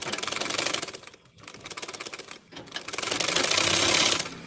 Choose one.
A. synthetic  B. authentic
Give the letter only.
B